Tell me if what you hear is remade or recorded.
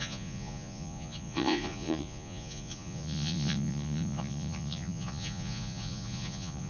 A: remade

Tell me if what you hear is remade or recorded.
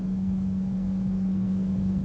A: remade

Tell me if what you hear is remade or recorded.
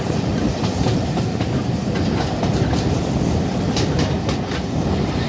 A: recorded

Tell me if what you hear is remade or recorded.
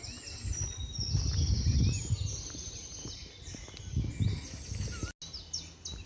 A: recorded